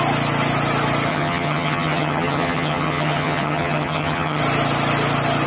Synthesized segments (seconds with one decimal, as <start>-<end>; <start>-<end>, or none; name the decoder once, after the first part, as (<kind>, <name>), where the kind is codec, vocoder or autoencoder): 1.1-4.4 (vocoder, HiFi-GAN)